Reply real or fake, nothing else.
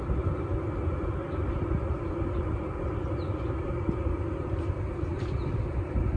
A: real